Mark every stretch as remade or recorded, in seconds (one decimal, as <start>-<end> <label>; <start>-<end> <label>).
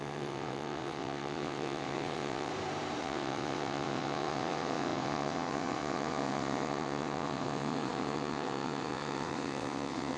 0.0-2.5 remade; 2.5-3.0 recorded; 3.0-10.2 remade